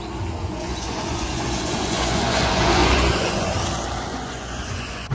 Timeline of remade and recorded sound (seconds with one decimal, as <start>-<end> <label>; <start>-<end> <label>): 0.0-0.4 recorded; 0.4-3.5 remade; 3.5-4.1 recorded; 4.1-5.1 remade